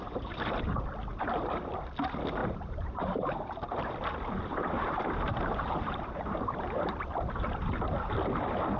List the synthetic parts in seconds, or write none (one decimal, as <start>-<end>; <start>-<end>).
0.0-0.6; 2.4-3.9; 4.5-8.1